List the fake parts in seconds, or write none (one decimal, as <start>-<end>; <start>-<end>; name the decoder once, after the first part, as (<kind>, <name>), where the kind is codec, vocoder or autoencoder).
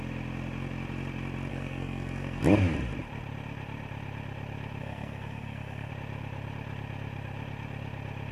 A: 1.5-2.4 (codec, SNAC); 4.8-5.9